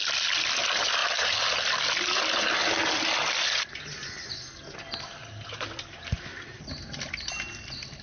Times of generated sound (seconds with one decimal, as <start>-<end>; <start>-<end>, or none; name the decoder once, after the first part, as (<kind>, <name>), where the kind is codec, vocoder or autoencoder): none